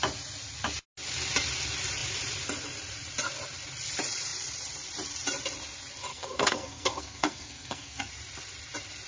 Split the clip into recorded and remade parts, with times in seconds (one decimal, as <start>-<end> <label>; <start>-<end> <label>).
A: 0.0-6.1 recorded; 6.1-8.1 remade; 8.1-9.1 recorded